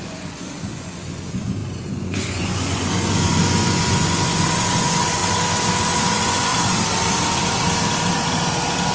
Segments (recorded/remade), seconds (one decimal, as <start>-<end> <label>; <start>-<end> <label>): 0.0-5.2 remade; 5.2-6.0 recorded; 6.0-6.5 remade; 6.5-8.9 recorded